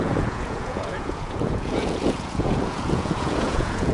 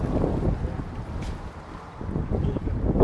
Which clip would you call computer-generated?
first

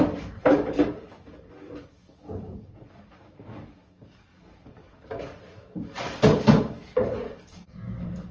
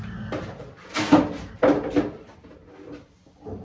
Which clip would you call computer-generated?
first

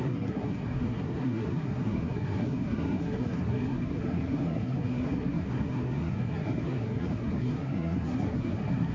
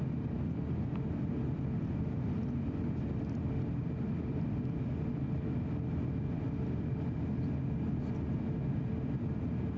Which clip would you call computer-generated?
first